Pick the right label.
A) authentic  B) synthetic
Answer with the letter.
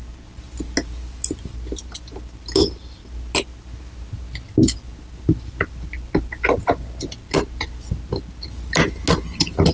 A